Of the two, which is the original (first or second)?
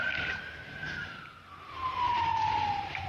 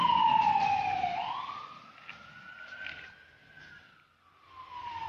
second